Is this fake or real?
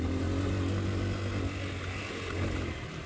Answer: real